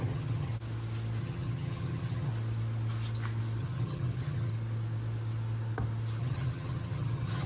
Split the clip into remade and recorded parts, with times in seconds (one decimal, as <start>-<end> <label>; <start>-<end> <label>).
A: 0.0-0.5 remade; 0.5-1.2 recorded; 1.2-2.3 remade; 2.3-3.6 recorded; 3.6-4.5 remade; 4.5-6.2 recorded; 6.2-7.5 remade